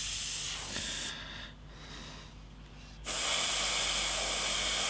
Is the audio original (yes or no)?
yes